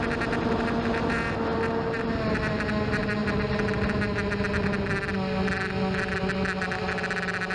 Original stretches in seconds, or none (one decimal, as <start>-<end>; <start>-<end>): 0.0-7.5